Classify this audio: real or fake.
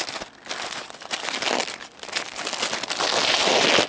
real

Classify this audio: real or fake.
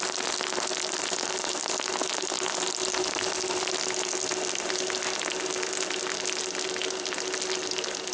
real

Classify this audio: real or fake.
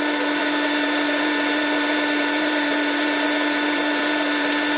fake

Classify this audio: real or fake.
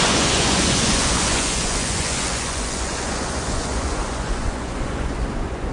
fake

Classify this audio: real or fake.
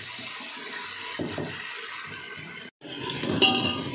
real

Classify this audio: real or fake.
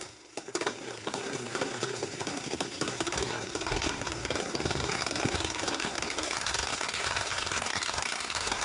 fake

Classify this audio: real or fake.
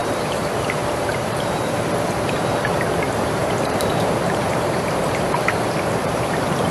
fake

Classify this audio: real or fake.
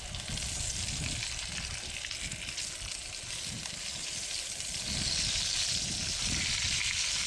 real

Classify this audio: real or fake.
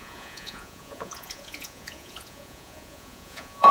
fake